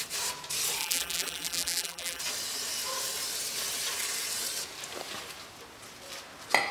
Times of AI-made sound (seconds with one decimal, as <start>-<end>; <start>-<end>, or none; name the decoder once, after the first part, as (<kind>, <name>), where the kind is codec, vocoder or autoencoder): 0.8-2.2 (vocoder, BigVGAN v2)